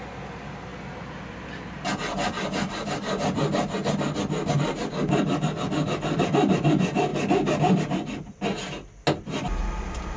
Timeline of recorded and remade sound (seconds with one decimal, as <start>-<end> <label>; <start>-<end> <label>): 0.0-10.2 recorded